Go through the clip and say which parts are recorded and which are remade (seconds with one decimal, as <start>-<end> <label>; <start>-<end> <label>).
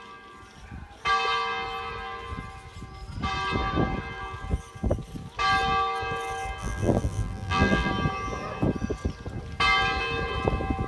0.0-6.6 recorded; 6.6-7.9 remade; 7.9-10.9 recorded